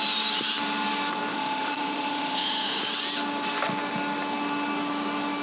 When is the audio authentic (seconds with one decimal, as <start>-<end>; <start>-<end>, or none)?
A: 0.0-1.3; 2.8-5.4